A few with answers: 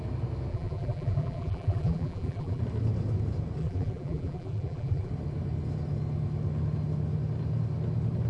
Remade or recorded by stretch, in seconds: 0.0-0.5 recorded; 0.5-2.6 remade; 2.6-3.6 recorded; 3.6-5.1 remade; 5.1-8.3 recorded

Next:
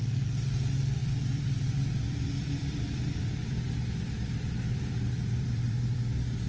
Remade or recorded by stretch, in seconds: 0.0-1.0 recorded; 1.0-3.7 remade; 3.7-4.6 recorded; 4.6-6.0 remade; 6.0-6.5 recorded